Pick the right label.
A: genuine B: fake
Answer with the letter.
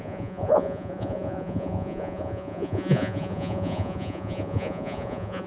B